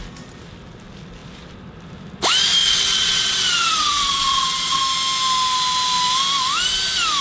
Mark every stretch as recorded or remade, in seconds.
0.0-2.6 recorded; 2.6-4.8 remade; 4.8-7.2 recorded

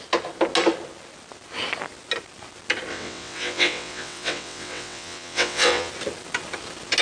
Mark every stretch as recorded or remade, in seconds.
0.0-2.9 recorded; 2.9-5.9 remade; 5.9-7.0 recorded

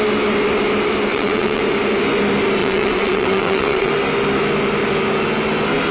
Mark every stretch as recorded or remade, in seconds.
0.0-1.1 recorded; 1.1-1.6 remade; 1.6-2.6 recorded; 2.6-3.9 remade; 3.9-5.9 recorded

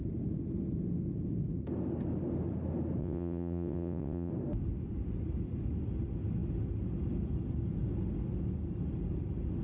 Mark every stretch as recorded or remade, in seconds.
0.0-3.0 recorded; 3.0-4.3 remade; 4.3-9.6 recorded

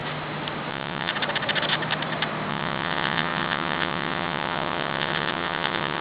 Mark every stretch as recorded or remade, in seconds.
0.0-0.7 recorded; 0.7-1.1 remade; 1.1-2.5 recorded; 2.5-6.0 remade

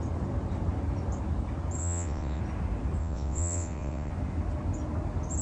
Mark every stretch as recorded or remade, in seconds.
0.0-1.8 recorded; 1.8-2.4 remade; 2.4-3.0 recorded; 3.0-4.1 remade; 4.1-5.4 recorded